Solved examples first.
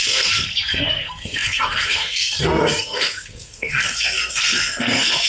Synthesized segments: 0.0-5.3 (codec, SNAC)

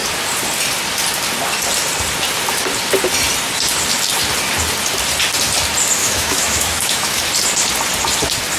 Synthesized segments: 6.0-7.2 (autoencoder, DAC-VAE)

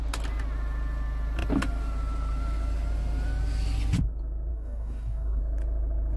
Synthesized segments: 4.5-5.4 (codec, DAC)

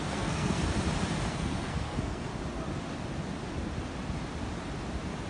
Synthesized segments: 0.0-0.6 (codec, SNAC); 1.3-2.3

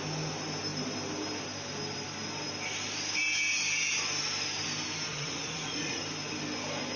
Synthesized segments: 5.1-6.0 (vocoder, Vocos)

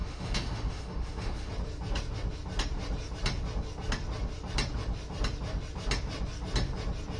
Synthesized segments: 0.0-1.5 (autoencoder, DAC-VAE)

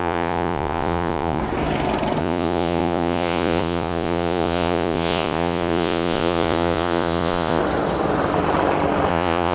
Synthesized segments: 0.0-1.4 (vocoder, Vocos); 2.2-7.6; 9.1-9.5

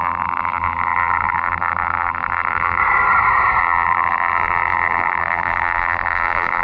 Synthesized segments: 0.0-2.8 (vocoder, BigVGAN v2); 3.6-6.6